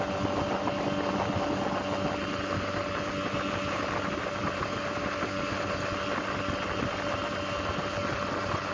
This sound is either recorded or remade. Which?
recorded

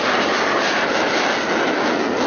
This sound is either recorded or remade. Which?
recorded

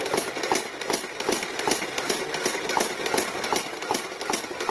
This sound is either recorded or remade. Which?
recorded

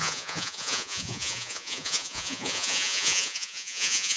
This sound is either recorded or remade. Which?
remade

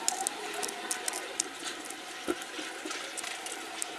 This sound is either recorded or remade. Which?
recorded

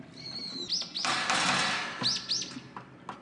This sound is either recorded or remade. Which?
recorded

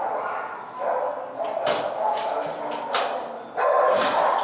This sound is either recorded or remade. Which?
recorded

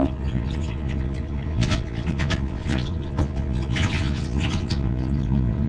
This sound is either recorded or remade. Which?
remade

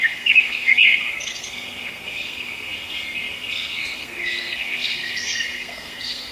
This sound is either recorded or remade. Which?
remade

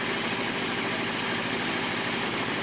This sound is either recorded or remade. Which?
recorded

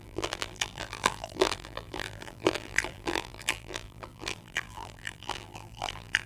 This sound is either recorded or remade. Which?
remade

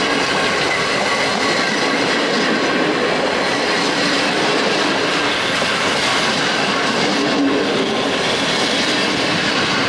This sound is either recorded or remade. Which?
recorded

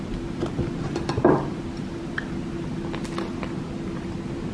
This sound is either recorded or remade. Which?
recorded